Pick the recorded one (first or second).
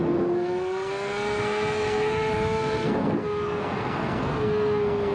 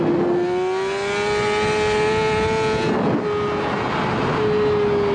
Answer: second